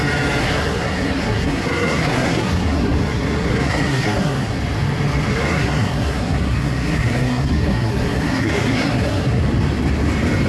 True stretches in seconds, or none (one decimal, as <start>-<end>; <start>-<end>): 0.0-0.4; 4.6-5.3; 9.4-10.5